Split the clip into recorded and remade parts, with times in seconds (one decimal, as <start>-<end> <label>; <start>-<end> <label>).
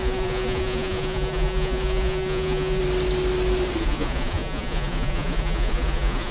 0.0-2.8 remade; 2.8-3.8 recorded; 3.8-6.3 remade